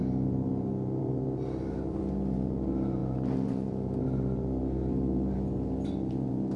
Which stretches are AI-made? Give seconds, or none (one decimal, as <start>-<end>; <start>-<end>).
none